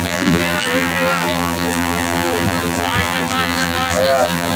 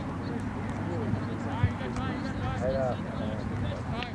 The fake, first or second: first